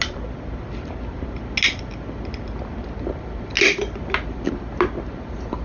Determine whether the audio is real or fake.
real